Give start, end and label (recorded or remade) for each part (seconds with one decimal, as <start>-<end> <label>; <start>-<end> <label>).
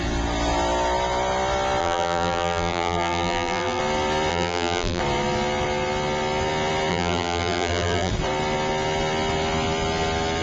0.0-1.8 recorded; 1.8-3.8 remade; 3.8-4.3 recorded; 4.3-5.0 remade; 5.0-6.9 recorded; 6.9-8.1 remade; 8.1-10.4 recorded